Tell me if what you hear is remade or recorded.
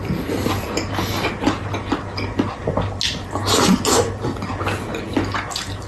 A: recorded